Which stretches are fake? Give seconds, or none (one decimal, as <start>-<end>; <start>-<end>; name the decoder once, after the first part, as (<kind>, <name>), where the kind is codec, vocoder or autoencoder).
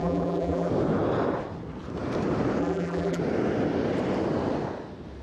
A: 0.0-0.7 (vocoder, BigVGAN v2); 2.6-3.2